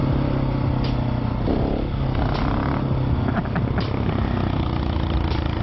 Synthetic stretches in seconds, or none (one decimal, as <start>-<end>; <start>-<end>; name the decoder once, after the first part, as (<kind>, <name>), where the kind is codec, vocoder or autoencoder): none